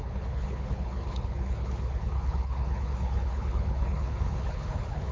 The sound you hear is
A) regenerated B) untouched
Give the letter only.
A